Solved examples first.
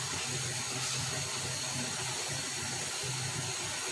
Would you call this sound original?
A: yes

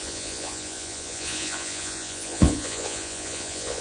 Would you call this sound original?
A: no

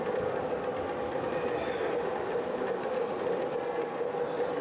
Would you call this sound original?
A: yes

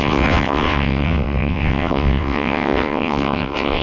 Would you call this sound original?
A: no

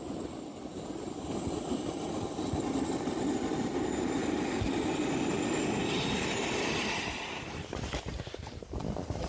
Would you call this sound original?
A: yes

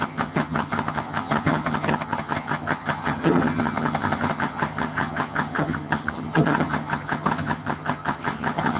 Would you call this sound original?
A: no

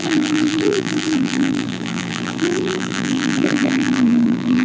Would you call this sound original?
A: no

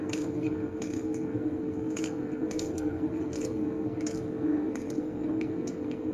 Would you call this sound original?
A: no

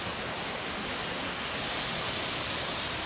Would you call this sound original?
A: yes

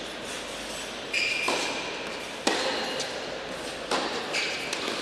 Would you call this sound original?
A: yes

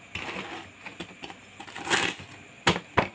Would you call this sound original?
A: yes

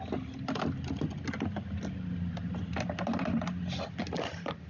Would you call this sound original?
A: yes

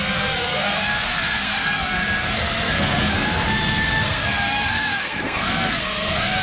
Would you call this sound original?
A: no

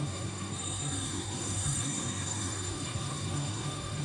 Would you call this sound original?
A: no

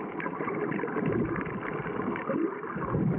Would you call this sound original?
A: yes